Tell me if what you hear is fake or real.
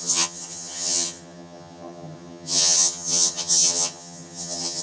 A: fake